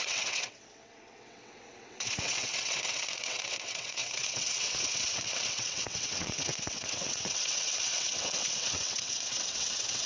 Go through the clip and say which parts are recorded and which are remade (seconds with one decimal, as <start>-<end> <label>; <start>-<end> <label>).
0.0-10.1 remade